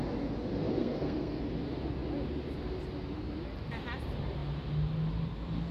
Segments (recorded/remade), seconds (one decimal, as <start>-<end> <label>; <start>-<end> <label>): 0.0-0.8 recorded; 0.8-1.4 remade; 1.4-5.7 recorded